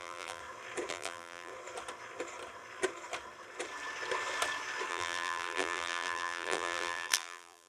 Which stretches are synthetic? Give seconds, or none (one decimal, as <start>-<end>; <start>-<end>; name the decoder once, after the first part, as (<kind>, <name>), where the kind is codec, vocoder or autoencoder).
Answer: 0.0-0.4 (vocoder, BigVGAN v2); 0.9-1.5; 4.9-7.7